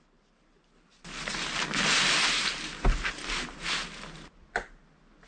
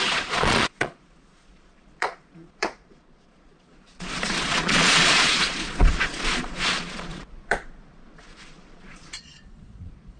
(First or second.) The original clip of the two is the first